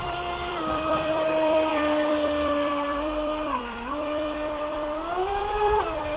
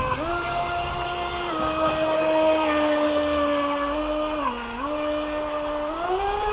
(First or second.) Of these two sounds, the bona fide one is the second